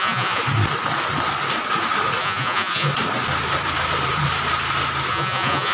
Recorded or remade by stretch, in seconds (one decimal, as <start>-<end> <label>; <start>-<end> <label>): 0.0-0.4 remade; 0.4-2.2 recorded; 2.2-2.9 remade; 2.9-5.1 recorded; 5.1-5.7 remade